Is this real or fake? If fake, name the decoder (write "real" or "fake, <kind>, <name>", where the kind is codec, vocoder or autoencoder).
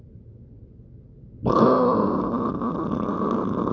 real